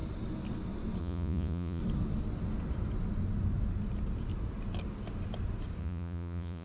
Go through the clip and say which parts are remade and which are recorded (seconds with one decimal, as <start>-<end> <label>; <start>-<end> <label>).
0.0-1.0 recorded; 1.0-1.8 remade; 1.8-5.8 recorded; 5.8-6.6 remade